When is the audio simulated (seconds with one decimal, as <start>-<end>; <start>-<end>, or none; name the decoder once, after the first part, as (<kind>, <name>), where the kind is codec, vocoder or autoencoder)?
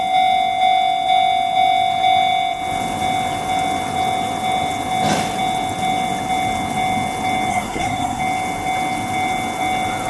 7.5-8.2 (codec, SNAC)